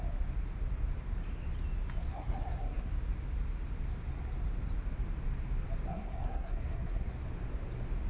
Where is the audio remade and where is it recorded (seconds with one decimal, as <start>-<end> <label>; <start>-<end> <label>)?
0.0-2.1 recorded; 2.1-2.9 remade; 2.9-5.9 recorded; 5.9-7.1 remade; 7.1-8.1 recorded

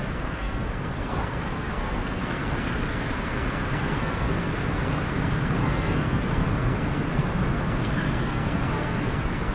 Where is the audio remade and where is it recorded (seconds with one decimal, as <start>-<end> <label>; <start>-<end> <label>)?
0.0-9.5 remade